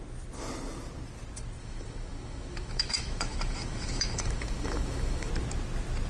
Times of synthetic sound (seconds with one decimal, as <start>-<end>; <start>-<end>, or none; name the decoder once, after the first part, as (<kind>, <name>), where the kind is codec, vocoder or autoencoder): 1.6-5.3 (autoencoder, DAC-VAE)